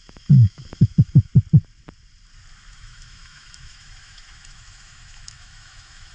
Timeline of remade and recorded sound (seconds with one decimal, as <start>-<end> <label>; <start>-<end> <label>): 0.0-1.3 remade; 1.3-2.7 recorded; 2.7-6.1 remade